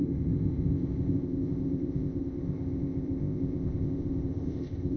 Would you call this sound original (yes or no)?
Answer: no